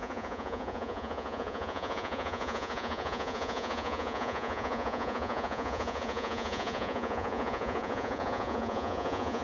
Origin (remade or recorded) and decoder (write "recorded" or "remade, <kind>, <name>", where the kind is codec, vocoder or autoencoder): remade, vocoder, Vocos